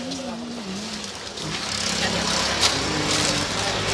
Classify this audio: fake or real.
real